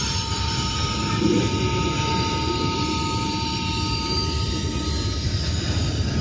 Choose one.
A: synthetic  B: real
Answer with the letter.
B